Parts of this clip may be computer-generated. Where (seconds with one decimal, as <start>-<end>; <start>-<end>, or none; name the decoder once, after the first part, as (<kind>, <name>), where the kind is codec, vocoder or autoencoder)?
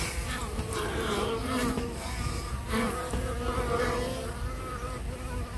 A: none